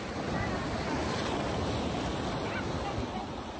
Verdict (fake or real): real